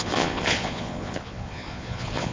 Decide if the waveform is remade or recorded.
remade